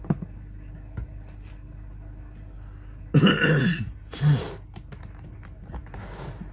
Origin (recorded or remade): recorded